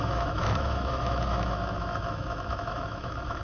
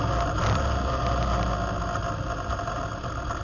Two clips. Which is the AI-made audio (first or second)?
first